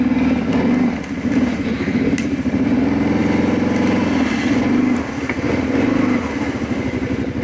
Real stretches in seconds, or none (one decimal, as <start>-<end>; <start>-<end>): 0.0-7.4